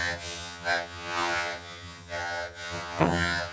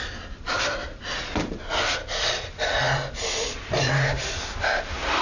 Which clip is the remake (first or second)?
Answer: first